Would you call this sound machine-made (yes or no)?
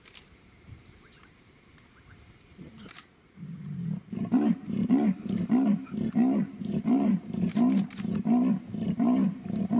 yes